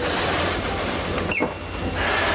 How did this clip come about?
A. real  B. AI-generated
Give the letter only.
A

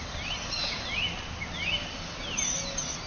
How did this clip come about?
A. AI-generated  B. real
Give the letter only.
B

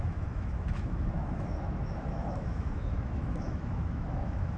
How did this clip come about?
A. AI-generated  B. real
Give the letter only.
A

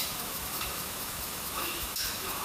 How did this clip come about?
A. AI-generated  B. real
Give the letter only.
A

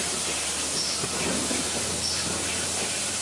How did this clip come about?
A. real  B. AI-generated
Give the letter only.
A